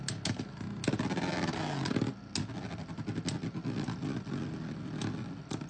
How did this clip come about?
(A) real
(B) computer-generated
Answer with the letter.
A